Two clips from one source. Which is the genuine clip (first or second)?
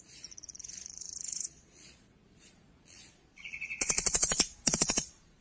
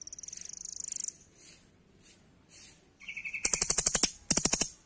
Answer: second